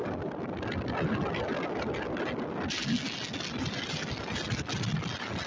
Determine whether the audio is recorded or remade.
recorded